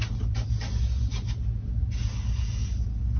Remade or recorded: recorded